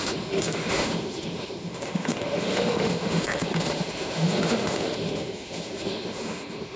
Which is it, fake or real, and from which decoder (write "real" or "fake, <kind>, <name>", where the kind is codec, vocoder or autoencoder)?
fake, autoencoder, DAC-VAE